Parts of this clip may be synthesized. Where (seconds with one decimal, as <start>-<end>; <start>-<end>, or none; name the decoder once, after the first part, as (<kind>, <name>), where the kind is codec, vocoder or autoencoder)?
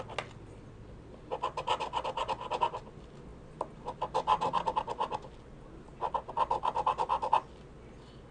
none